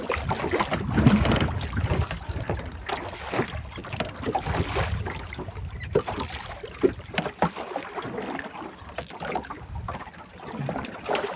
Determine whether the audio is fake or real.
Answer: real